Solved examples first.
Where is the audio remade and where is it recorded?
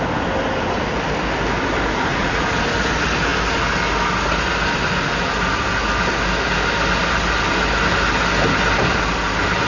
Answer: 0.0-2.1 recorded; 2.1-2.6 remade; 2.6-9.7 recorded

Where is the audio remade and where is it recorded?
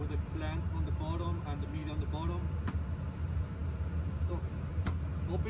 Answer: 0.0-5.5 recorded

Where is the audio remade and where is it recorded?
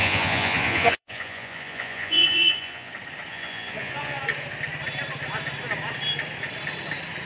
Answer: 0.0-2.9 remade; 2.9-3.3 recorded; 3.3-4.2 remade; 4.2-7.3 recorded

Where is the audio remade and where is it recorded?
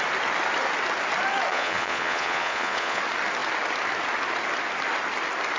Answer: 0.0-1.5 recorded; 1.5-3.0 remade; 3.0-5.6 recorded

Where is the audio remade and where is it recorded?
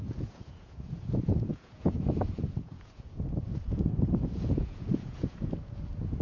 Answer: 0.0-6.2 remade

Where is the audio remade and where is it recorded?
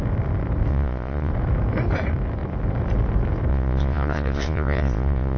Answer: 0.0-0.7 recorded; 0.7-1.3 remade; 1.3-3.5 recorded; 3.5-5.4 remade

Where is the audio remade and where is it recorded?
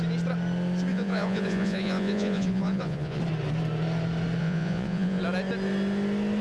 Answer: 0.0-0.9 recorded; 0.9-3.2 remade; 3.2-4.4 recorded; 4.4-5.2 remade; 5.2-6.4 recorded